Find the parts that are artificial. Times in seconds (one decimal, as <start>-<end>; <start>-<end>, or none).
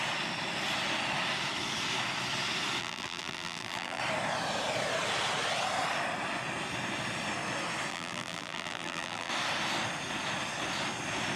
2.8-4.0; 7.9-9.3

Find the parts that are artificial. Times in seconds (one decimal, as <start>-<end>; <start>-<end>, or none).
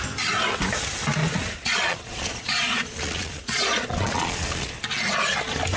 1.2-4.7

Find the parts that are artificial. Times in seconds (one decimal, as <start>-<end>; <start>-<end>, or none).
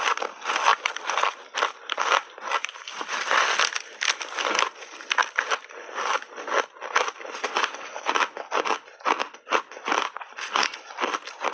none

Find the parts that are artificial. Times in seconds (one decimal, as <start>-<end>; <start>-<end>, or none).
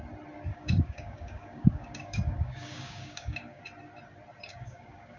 0.5-3.6; 4.5-5.2